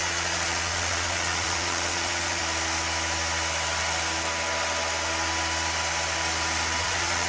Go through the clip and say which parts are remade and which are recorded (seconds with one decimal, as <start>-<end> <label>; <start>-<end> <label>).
0.0-2.4 remade; 2.4-6.8 recorded; 6.8-7.3 remade